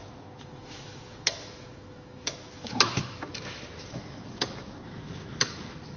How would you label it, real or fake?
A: fake